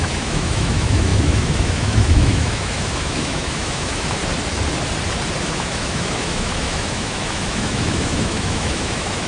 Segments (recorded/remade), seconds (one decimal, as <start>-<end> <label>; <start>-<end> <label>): 0.0-4.2 remade; 4.2-5.4 recorded; 5.4-9.3 remade